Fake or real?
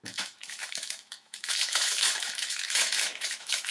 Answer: fake